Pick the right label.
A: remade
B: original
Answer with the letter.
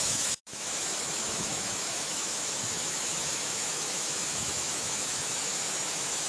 A